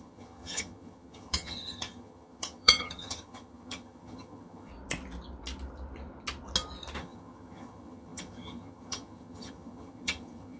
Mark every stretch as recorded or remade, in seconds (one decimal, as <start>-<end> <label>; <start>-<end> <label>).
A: 0.0-4.7 remade; 4.7-7.0 recorded; 7.0-10.6 remade